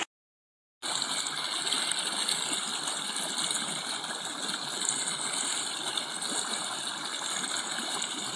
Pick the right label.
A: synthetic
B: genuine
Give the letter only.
B